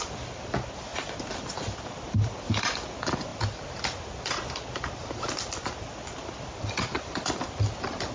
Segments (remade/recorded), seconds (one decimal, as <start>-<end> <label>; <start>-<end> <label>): 0.0-8.1 recorded